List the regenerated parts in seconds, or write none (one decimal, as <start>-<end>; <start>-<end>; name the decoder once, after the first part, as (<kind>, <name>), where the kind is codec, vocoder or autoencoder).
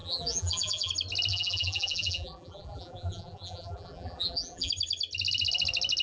0.0-0.9 (vocoder, BigVGAN v2); 1.3-4.7